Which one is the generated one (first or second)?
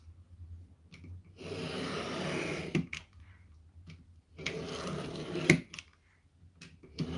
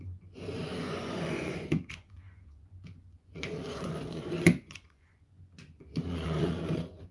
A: second